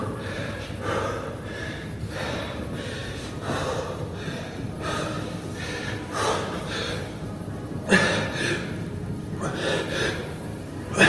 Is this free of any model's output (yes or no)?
no